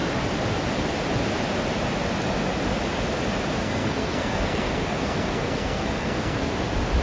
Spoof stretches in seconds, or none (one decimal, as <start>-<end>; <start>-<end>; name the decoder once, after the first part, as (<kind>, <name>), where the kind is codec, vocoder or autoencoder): 3.6-6.5 (codec, SNAC)